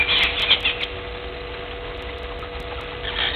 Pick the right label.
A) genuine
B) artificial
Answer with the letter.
A